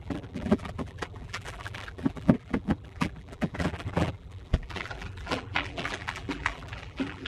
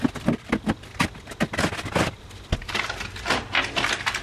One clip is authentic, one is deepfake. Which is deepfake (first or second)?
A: first